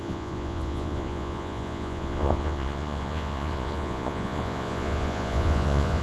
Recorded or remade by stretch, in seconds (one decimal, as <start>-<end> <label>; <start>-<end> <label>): 0.0-6.0 remade